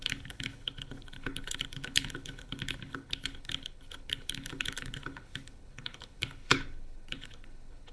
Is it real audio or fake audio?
fake